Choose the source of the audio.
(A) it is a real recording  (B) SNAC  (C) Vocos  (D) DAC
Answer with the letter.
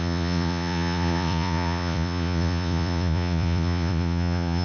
C